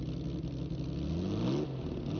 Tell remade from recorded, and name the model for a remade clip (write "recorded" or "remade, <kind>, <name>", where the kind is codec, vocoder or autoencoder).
recorded